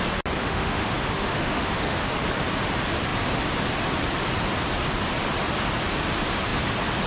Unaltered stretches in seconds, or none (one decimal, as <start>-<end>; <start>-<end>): 0.0-0.4; 2.0-7.1